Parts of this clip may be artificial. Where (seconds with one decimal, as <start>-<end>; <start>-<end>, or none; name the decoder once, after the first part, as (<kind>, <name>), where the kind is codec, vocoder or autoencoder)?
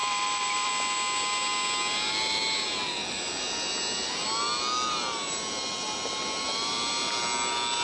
0.0-0.7 (vocoder, BigVGAN v2)